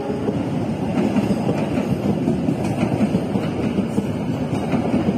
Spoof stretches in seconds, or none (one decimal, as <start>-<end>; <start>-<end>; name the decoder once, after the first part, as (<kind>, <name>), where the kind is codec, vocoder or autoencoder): none